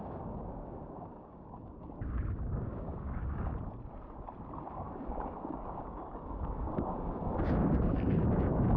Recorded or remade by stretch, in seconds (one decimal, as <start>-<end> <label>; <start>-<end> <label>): 0.0-3.5 remade; 3.5-4.7 recorded; 4.7-8.8 remade